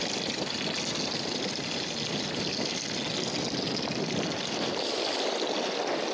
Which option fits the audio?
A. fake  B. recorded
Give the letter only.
B